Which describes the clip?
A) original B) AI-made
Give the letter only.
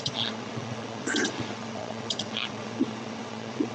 B